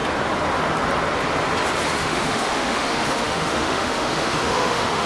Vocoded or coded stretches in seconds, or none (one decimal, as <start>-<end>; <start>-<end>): 2.0-5.1